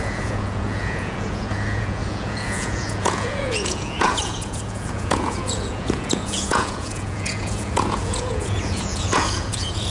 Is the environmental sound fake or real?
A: fake